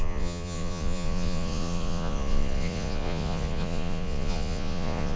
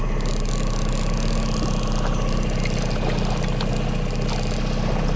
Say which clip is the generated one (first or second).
first